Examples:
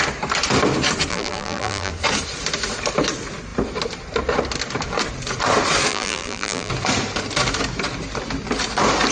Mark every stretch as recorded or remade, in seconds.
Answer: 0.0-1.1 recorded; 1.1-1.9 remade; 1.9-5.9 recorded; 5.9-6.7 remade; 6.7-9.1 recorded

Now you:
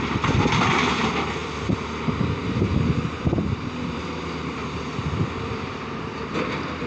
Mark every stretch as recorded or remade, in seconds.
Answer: 0.0-6.9 remade

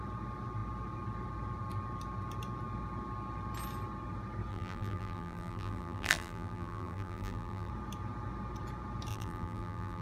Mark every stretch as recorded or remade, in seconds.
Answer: 0.0-4.5 recorded; 4.5-7.7 remade; 7.7-9.1 recorded; 9.1-10.0 remade

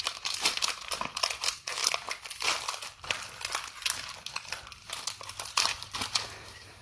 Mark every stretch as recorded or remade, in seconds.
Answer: 0.0-1.8 remade; 1.8-5.5 recorded; 5.5-6.8 remade

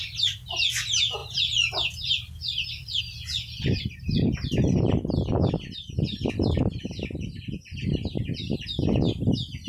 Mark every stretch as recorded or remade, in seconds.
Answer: 0.0-1.2 recorded; 1.2-3.0 remade; 3.0-9.7 recorded